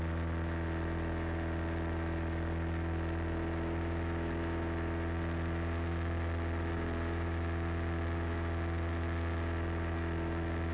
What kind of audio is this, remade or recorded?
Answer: recorded